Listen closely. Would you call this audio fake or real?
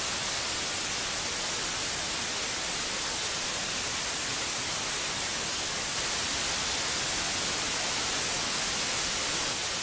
real